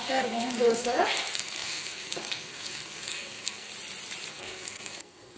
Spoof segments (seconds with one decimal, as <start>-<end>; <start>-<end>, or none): 0.0-3.7; 4.3-5.4

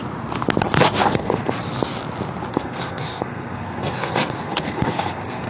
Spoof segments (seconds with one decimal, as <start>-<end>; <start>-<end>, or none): 1.0-1.6; 2.5-5.5

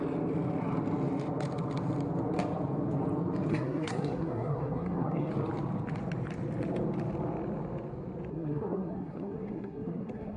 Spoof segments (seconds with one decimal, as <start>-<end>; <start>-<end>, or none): 3.5-5.3; 8.3-10.4

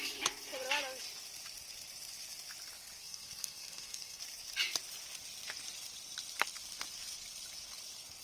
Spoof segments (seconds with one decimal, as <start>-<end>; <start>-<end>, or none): 3.0-4.2

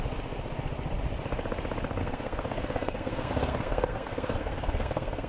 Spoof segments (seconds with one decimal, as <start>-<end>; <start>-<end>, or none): 2.0-5.3

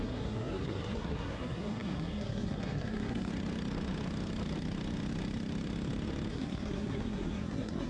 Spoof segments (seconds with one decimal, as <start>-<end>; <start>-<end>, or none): 0.0-3.3; 6.3-7.9